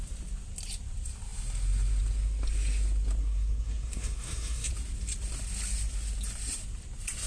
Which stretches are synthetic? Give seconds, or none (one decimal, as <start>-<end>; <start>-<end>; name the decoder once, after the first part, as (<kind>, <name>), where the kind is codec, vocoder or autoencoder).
3.2-4.7 (codec, SNAC)